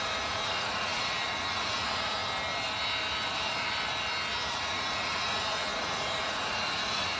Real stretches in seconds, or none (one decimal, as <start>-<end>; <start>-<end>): 2.2-4.5